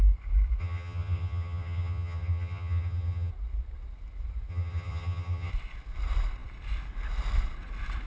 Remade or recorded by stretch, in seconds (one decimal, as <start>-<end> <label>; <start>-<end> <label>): 0.0-0.6 recorded; 0.6-3.3 remade; 3.3-4.5 recorded; 4.5-5.5 remade; 5.5-8.1 recorded